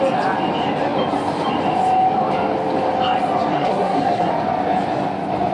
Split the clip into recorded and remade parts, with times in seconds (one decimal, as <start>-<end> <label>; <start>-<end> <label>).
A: 0.0-3.5 recorded; 3.5-4.3 remade; 4.3-5.5 recorded